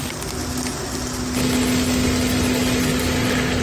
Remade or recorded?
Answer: recorded